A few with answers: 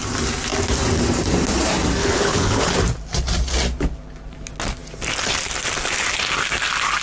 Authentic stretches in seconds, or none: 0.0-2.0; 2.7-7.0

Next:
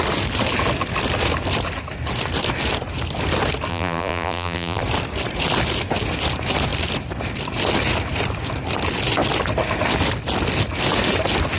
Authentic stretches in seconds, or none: 0.0-3.7; 4.8-11.6

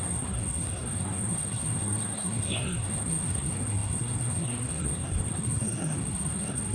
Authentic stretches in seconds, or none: none

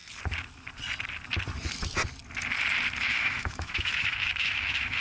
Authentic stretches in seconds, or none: 0.0-3.0

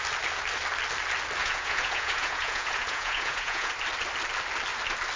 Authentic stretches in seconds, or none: 0.0-1.4; 3.7-5.2

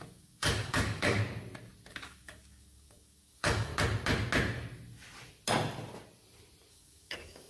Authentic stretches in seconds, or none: 1.2-1.9; 3.7-6.7